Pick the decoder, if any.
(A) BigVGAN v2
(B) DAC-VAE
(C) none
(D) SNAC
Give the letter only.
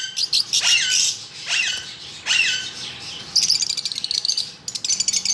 C